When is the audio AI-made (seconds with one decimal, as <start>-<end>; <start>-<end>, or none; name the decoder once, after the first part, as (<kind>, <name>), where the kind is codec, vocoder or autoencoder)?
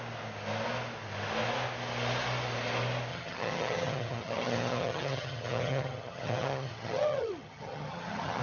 3.1-8.4 (vocoder, HiFi-GAN)